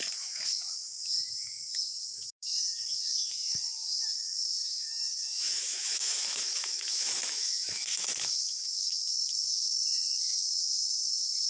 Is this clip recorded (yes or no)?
no